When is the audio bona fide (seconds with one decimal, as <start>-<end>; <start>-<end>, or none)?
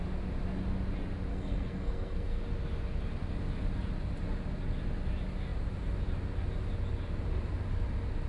0.0-1.3; 2.4-8.3